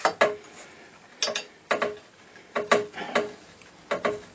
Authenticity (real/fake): real